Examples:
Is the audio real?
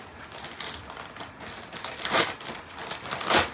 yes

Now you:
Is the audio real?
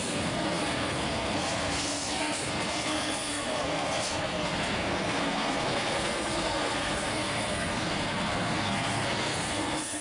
no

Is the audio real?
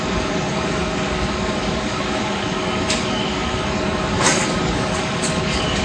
no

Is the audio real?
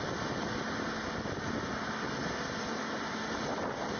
yes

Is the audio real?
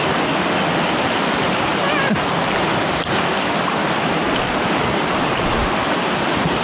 yes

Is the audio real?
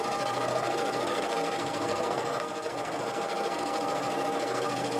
no